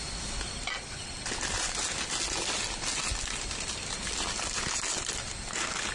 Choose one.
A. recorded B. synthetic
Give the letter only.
A